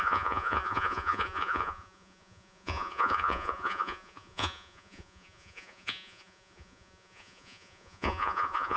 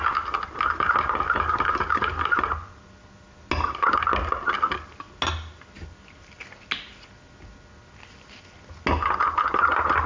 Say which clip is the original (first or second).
second